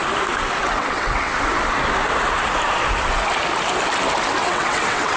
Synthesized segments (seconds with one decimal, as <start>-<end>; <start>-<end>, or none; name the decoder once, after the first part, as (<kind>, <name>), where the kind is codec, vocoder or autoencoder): 0.6-1.3 (vocoder, WaveNeXt); 4.4-5.2